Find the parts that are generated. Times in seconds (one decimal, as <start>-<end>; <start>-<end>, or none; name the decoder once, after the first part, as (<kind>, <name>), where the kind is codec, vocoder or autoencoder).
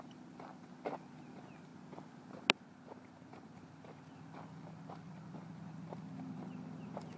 0.0-0.5 (vocoder, BigVGAN v2); 1.2-1.7; 2.2-7.2